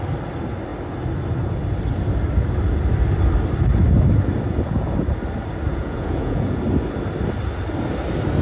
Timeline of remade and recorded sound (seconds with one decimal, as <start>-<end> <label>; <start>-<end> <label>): 0.0-5.7 recorded; 5.7-6.6 remade; 6.6-8.4 recorded